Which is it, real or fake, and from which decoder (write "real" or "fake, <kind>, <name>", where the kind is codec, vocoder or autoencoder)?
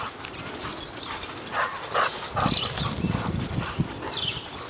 real